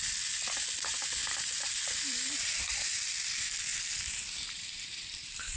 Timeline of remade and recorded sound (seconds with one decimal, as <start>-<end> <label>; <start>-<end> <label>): 0.0-1.2 recorded; 1.2-3.0 remade; 3.0-3.7 recorded; 3.7-5.6 remade